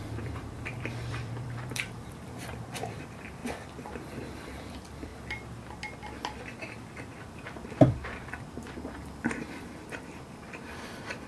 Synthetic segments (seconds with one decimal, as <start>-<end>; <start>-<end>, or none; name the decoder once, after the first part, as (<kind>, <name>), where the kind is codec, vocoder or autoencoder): 0.0-3.4 (vocoder, BigVGAN v2); 3.9-5.1; 7.2-11.3